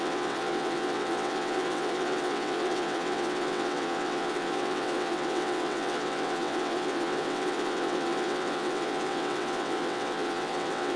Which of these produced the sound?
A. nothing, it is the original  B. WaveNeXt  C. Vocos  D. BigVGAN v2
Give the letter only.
B